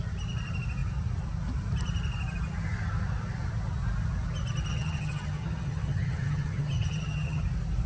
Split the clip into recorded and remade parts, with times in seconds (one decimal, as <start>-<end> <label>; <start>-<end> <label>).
0.0-4.7 recorded; 4.7-7.4 remade; 7.4-7.9 recorded